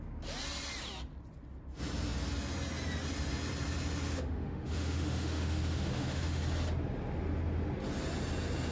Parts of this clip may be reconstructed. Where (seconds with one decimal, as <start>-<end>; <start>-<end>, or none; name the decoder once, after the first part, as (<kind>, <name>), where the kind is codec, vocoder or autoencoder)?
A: 4.1-6.4 (autoencoder, DAC-VAE)